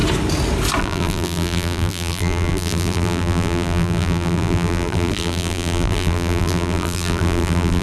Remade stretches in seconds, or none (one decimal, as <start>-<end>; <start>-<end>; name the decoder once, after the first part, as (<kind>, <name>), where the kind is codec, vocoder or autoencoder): 0.8-7.8 (vocoder, BigVGAN v2)